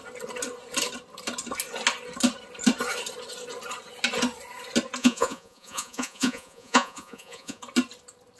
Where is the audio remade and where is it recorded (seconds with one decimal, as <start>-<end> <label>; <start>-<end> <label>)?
0.0-5.0 recorded; 5.0-7.6 remade; 7.6-8.4 recorded

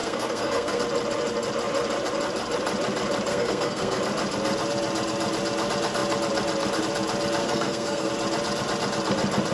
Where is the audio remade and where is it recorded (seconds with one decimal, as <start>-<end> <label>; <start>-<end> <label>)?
0.0-0.8 remade; 0.8-3.3 recorded; 3.3-4.0 remade; 4.0-7.4 recorded; 7.4-8.1 remade; 8.1-9.5 recorded

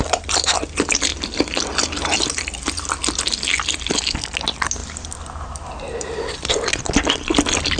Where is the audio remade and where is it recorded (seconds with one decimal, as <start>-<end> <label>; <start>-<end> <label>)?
0.0-7.8 recorded

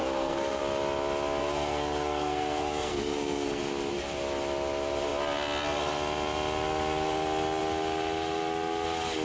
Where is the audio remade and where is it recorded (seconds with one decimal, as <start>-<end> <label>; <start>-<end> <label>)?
0.0-0.6 remade; 0.6-1.4 recorded; 1.4-3.6 remade; 3.6-9.2 recorded

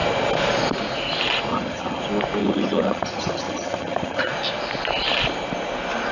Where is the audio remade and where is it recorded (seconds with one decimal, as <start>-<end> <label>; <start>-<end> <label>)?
0.0-1.5 recorded; 1.5-2.0 remade; 2.0-2.4 recorded; 2.4-4.3 remade; 4.3-6.1 recorded

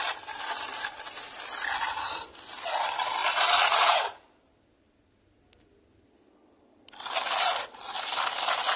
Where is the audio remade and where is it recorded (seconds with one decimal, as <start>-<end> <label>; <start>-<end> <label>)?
0.0-8.8 recorded